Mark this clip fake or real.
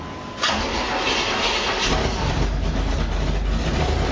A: real